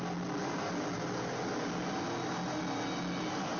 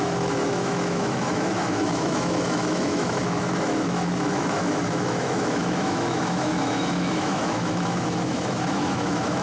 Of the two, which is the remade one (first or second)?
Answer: second